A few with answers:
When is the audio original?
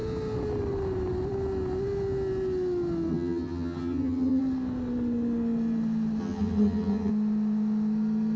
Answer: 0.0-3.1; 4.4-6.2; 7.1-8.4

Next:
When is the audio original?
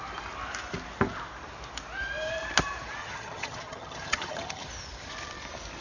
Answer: 0.0-3.0; 4.7-5.8